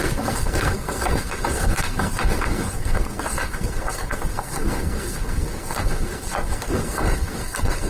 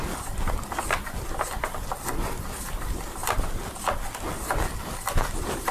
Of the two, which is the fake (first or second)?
first